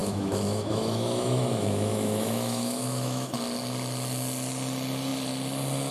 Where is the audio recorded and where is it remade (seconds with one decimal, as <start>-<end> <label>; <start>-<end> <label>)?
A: 0.0-3.3 remade; 3.3-5.9 recorded